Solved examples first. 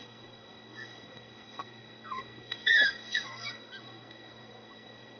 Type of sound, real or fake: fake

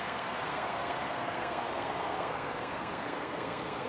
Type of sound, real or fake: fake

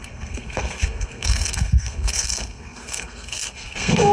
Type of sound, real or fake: fake